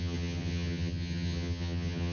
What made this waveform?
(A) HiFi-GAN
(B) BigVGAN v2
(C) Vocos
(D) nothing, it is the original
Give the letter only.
A